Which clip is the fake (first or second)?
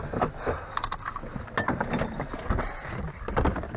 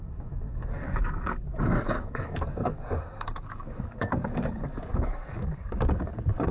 second